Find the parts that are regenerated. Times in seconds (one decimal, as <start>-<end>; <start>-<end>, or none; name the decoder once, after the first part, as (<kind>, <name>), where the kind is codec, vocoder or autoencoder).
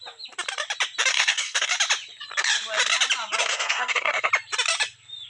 1.1-1.7 (codec, SNAC); 3.4-4.3